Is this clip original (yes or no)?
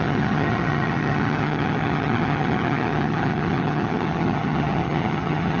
no